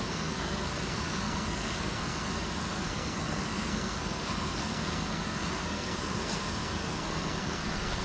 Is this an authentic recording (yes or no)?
no